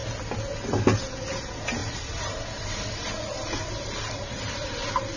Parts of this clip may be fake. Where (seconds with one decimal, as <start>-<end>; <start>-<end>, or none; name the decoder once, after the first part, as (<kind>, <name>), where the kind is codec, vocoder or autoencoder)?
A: 1.8-4.7 (vocoder, BigVGAN v2)